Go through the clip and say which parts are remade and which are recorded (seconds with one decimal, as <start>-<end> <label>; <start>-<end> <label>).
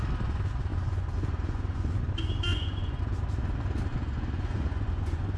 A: 0.0-0.7 recorded; 0.7-2.0 remade; 2.0-2.5 recorded; 2.5-3.0 remade; 3.0-3.9 recorded; 3.9-5.4 remade